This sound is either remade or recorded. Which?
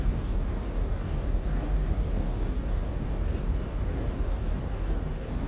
remade